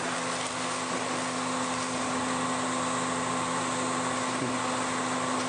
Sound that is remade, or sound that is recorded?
recorded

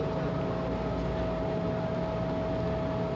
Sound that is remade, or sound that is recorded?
recorded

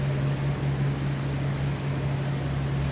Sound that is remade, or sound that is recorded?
recorded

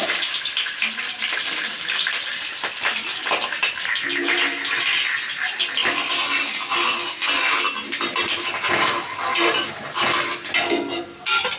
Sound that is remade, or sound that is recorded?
recorded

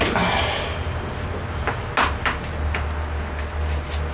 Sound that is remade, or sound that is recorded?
recorded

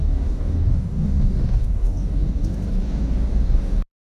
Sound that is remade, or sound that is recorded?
remade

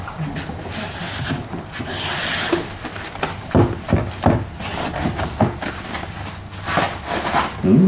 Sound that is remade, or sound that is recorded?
recorded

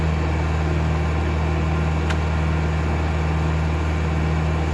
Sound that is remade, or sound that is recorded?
recorded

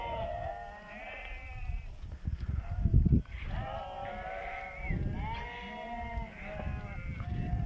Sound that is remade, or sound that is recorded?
recorded